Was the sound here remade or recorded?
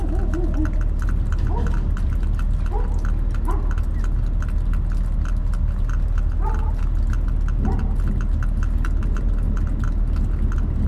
recorded